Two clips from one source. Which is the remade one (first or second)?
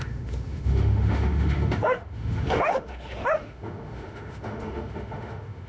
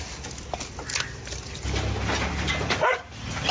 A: first